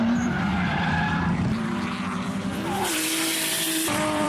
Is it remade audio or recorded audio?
remade